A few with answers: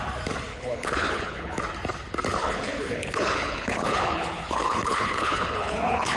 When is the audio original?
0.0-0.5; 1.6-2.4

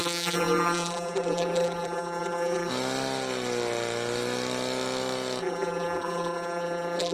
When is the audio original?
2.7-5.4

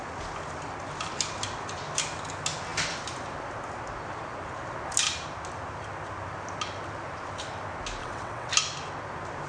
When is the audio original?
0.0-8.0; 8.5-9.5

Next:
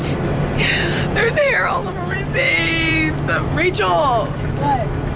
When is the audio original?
3.1-5.2

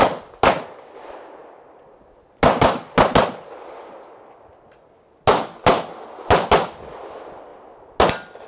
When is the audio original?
0.0-8.5

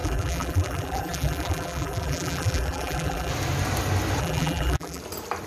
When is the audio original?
3.3-4.2; 5.0-5.5